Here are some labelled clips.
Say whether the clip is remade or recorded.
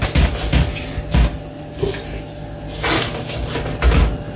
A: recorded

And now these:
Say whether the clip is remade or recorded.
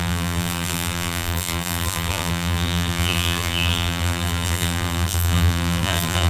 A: remade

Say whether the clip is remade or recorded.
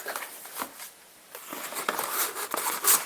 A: remade